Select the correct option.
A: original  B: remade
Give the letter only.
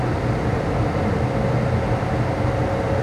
A